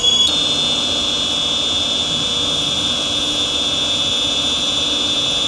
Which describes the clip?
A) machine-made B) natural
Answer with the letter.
B